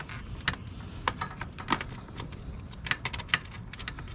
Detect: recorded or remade recorded